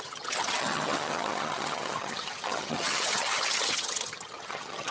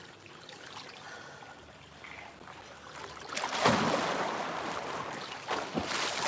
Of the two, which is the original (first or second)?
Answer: second